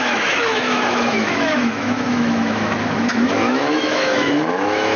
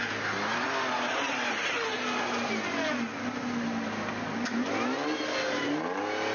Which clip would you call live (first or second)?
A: second